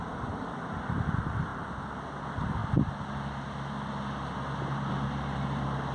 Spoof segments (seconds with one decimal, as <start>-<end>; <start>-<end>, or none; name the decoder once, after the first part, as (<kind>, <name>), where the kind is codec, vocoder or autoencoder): none

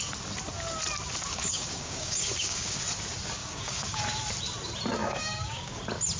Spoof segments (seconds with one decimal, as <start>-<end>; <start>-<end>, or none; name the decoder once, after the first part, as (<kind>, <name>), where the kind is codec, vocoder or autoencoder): 1.3-2.8 (codec, DAC); 3.4-4.0; 5.0-5.8